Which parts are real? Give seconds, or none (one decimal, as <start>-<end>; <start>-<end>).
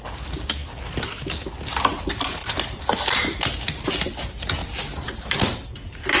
0.0-2.4; 3.9-6.2